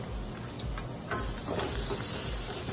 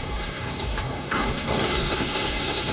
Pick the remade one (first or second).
second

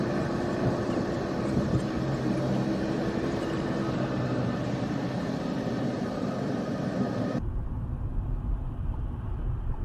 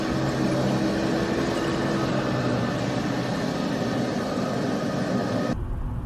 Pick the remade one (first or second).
first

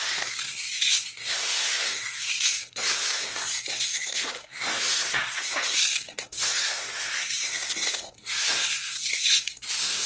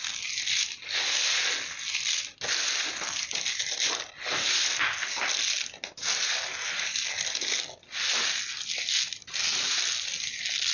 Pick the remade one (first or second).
first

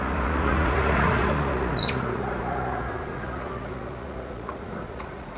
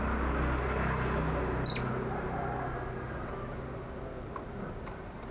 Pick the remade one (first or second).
first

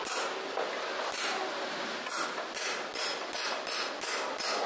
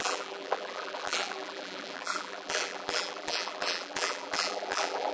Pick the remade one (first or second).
second